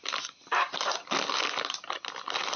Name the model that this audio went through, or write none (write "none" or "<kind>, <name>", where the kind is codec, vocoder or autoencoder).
none